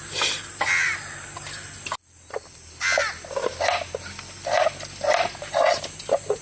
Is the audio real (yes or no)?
yes